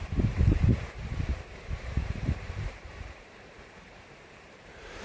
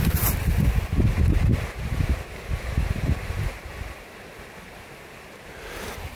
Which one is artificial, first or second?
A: first